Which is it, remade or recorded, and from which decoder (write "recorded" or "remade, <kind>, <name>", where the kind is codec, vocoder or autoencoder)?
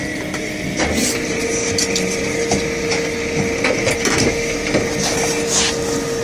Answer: recorded